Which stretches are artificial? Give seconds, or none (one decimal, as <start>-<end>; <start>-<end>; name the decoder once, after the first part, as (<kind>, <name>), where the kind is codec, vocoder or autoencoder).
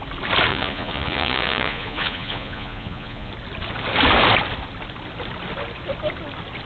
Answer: 0.5-3.3 (vocoder, Vocos)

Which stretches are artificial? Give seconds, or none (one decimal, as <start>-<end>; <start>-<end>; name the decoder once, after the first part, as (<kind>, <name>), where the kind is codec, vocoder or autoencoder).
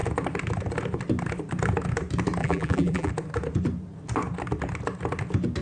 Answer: 2.4-3.1 (vocoder, BigVGAN v2)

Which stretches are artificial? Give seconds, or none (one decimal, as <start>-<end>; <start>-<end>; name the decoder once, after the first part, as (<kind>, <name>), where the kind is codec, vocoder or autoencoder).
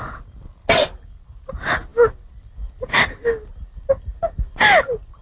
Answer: none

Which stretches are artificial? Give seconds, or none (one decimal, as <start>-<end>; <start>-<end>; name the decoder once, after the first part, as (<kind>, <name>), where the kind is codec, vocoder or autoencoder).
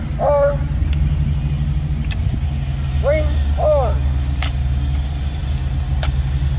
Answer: none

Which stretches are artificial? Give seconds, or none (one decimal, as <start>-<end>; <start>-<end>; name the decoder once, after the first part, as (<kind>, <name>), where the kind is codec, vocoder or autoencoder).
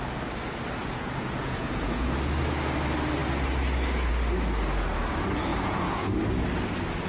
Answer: 0.8-2.0 (vocoder, Vocos); 5.5-6.1